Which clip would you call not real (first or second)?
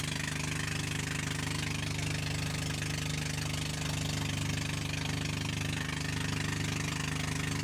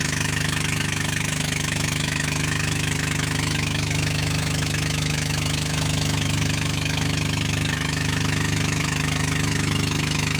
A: second